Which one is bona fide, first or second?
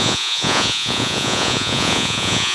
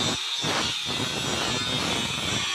second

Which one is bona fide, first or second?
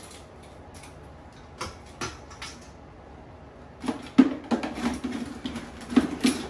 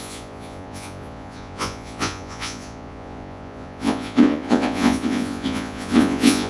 first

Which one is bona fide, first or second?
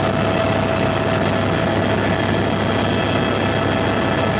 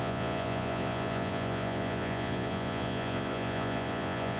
first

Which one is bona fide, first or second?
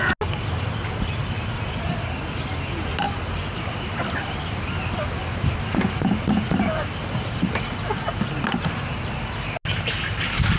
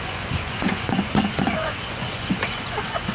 first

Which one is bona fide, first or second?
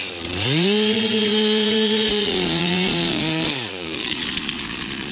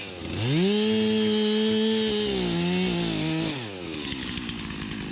second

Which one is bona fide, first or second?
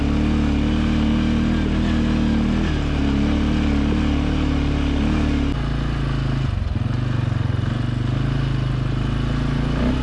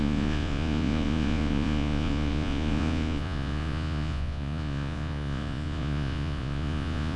first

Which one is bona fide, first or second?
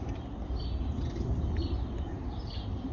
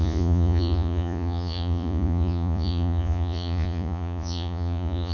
first